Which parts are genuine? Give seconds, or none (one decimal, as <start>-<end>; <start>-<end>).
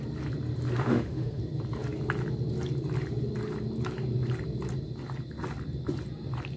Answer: 0.0-0.8; 1.4-6.6